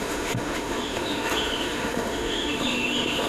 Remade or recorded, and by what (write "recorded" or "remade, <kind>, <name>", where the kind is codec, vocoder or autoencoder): remade, autoencoder, DAC-VAE